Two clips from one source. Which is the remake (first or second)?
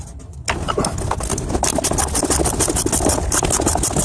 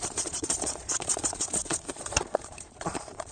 second